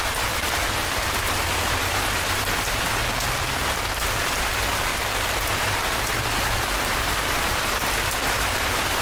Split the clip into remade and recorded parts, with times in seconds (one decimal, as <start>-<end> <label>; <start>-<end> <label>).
0.0-3.0 remade; 3.0-4.0 recorded; 4.0-4.9 remade; 4.9-5.5 recorded; 5.5-9.0 remade